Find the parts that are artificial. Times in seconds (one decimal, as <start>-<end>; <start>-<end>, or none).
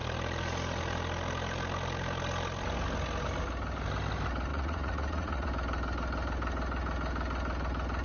4.5-5.5